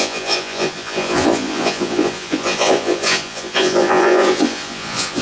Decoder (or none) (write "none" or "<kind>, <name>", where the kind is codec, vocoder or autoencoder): vocoder, Vocos